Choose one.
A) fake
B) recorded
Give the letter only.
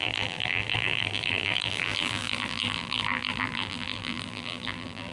A